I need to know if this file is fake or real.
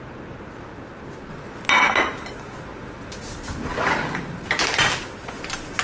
real